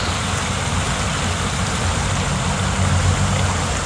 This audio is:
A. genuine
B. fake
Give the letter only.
A